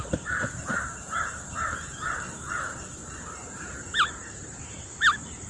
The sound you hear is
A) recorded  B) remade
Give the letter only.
B